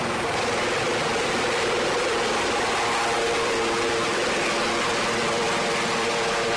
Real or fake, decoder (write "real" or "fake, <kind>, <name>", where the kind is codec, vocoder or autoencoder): real